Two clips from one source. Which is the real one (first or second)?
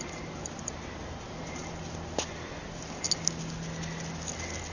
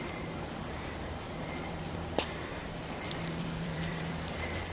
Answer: first